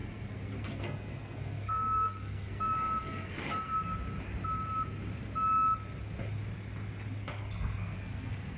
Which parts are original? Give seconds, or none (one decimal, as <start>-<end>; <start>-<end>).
3.7-7.2